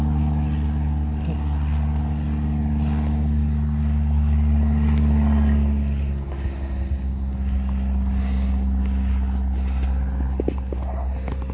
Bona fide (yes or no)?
yes